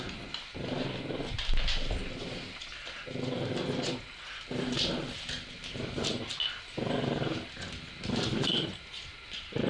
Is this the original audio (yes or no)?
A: yes